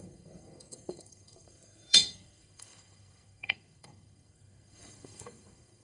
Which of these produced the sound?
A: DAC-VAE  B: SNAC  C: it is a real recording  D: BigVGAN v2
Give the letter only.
B